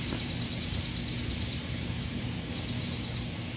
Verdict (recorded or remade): recorded